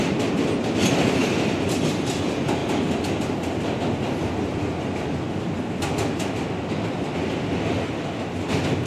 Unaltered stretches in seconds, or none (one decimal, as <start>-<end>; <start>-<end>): 0.0-8.9